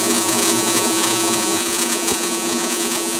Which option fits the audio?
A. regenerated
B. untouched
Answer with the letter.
A